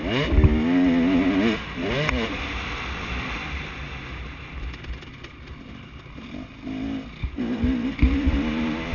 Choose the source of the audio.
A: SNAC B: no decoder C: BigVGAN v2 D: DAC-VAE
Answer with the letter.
B